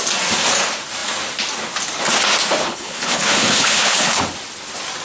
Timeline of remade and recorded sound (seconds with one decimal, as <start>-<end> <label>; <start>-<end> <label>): 0.0-2.6 recorded; 2.6-4.2 remade; 4.2-5.0 recorded